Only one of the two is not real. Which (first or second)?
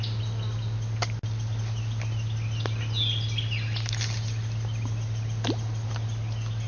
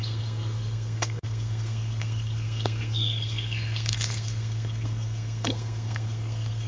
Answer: second